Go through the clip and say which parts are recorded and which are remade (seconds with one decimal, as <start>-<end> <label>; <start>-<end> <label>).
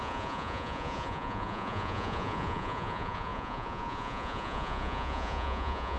0.0-6.0 remade